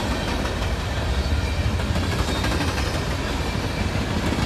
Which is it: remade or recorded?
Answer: recorded